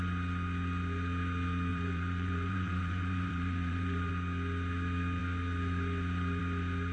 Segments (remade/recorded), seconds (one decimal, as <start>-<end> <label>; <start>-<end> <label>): 0.0-1.7 recorded; 1.7-4.1 remade; 4.1-6.9 recorded